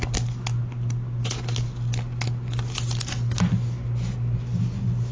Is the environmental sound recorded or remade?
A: recorded